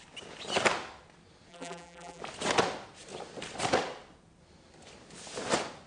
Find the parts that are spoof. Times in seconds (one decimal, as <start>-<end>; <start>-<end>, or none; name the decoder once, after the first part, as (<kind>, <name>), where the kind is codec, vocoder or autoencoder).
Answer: 1.5-2.2 (vocoder, BigVGAN v2)